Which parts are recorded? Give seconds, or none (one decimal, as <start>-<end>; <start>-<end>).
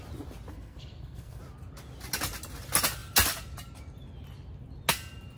0.0-0.5; 1.4-5.4